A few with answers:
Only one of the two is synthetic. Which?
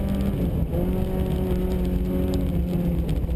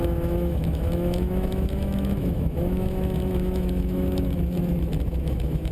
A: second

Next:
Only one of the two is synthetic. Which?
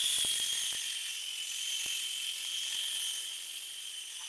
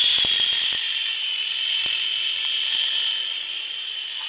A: second